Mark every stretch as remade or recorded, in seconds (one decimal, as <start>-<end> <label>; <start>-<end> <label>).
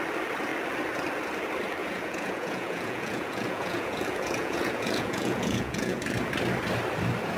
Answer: 0.0-1.8 recorded; 1.8-6.0 remade; 6.0-7.4 recorded